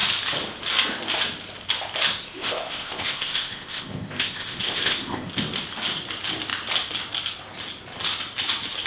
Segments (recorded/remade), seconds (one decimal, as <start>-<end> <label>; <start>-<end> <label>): 0.0-2.2 recorded; 2.2-5.3 remade; 5.3-8.9 recorded